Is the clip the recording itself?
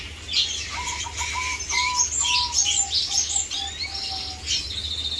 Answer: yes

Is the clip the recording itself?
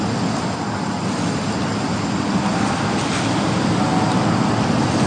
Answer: yes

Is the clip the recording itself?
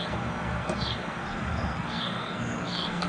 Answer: no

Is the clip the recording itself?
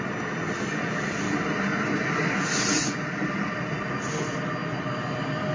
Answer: yes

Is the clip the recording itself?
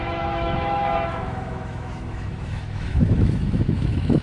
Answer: no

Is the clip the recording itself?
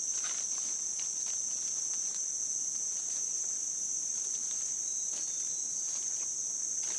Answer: yes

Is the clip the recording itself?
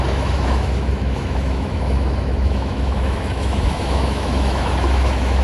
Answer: no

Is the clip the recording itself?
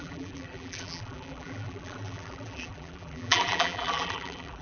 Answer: no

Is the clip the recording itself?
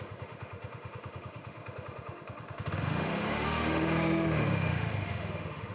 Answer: no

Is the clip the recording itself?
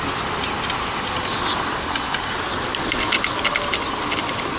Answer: yes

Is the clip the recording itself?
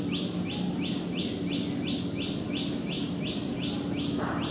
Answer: yes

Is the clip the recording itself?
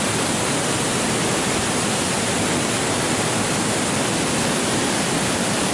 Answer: yes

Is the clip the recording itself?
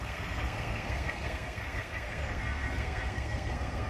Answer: no